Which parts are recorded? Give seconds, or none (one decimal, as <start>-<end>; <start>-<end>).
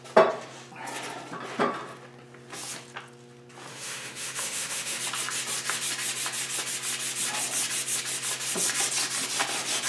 0.0-3.7; 5.0-9.9